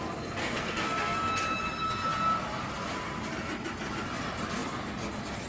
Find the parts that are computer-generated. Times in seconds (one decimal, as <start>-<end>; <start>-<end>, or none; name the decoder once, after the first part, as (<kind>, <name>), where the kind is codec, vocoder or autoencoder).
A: 0.4-1.3 (codec, SNAC)